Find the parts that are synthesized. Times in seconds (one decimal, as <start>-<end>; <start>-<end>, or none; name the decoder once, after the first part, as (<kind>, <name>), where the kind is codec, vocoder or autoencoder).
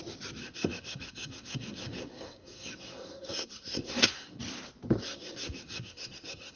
0.4-4.4 (codec, SNAC); 5.0-6.6